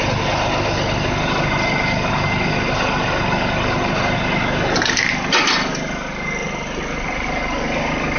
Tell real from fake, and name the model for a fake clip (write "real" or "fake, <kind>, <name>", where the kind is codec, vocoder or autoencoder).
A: real